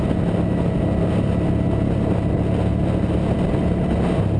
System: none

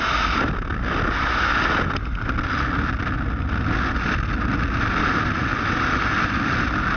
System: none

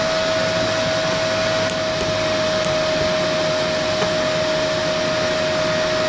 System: none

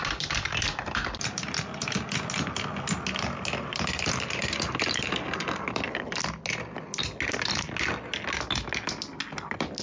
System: none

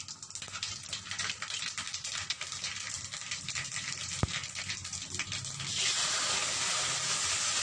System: none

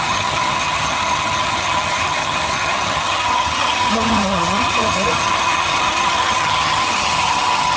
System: vocoder, HiFi-GAN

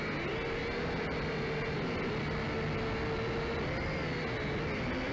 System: none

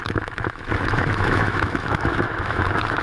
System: autoencoder, DAC-VAE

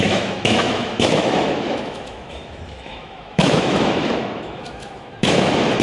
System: autoencoder, DAC-VAE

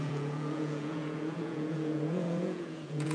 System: vocoder, Vocos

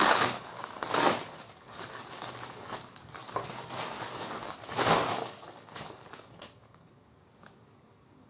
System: codec, DAC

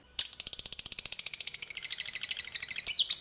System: none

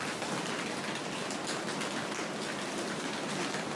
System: none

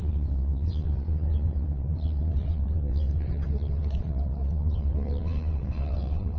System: vocoder, WaveNeXt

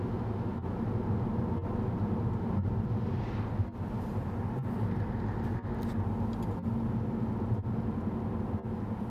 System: none